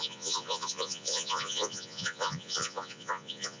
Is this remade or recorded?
remade